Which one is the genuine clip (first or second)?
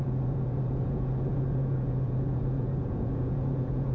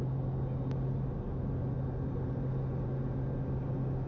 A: second